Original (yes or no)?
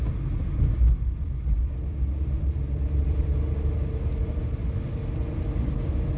yes